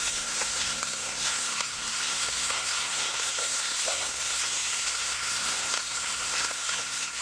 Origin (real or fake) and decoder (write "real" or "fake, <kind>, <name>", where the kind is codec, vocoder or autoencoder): fake, codec, SNAC